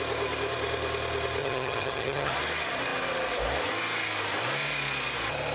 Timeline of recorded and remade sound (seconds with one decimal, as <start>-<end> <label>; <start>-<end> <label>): 0.0-1.4 recorded; 1.4-2.3 remade; 2.3-5.5 recorded